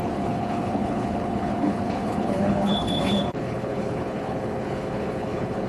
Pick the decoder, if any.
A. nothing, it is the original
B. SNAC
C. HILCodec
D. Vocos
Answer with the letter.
C